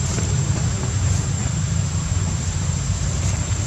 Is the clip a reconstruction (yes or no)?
yes